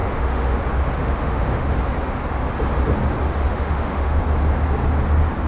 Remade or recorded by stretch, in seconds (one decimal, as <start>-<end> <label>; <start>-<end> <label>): 0.0-0.6 remade; 0.6-1.0 recorded; 1.0-1.8 remade; 1.8-3.5 recorded; 3.5-4.2 remade; 4.2-5.5 recorded